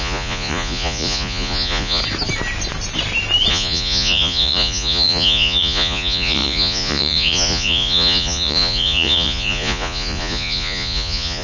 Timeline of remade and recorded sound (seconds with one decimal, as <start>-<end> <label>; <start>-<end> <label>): 0.0-2.0 remade; 2.0-3.5 recorded; 3.5-11.4 remade